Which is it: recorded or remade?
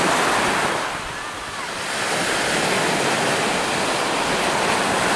recorded